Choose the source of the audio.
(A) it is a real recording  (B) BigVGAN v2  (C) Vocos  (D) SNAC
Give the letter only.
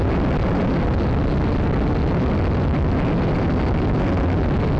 A